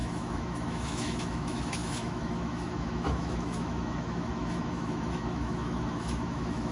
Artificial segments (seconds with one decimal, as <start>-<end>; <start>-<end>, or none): 0.0-6.7